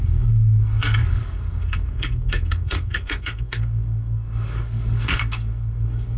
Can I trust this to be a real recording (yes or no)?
no